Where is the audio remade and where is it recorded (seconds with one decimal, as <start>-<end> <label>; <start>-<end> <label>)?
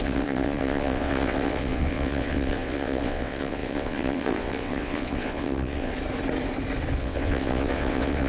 0.0-5.9 remade; 5.9-7.0 recorded; 7.0-8.3 remade